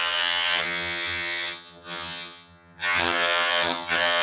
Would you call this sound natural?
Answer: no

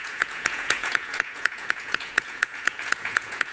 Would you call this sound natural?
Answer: no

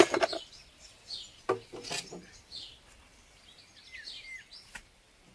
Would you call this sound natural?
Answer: yes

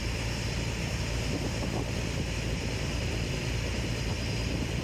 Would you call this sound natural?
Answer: no